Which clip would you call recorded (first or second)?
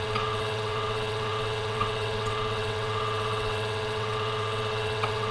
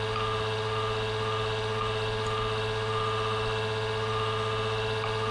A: second